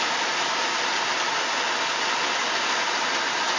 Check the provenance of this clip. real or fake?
real